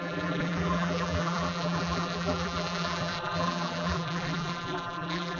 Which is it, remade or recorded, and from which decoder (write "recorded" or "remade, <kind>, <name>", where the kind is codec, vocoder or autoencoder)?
remade, vocoder, BigVGAN v2